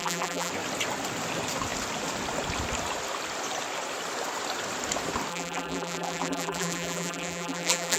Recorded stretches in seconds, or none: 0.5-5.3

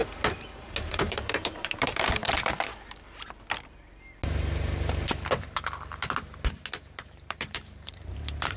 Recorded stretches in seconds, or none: 0.0-0.9; 2.7-7.0